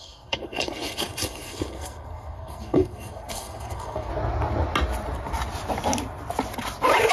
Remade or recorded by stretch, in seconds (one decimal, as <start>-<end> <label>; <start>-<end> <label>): 0.0-4.1 remade; 4.1-7.1 recorded